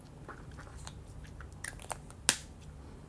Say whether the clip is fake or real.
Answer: real